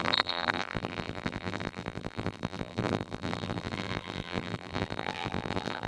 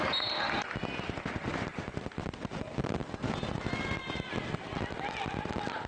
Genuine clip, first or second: second